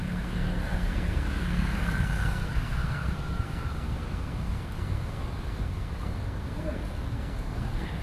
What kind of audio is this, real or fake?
fake